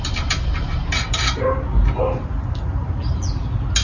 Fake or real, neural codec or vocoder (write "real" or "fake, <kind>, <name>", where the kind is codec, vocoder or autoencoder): real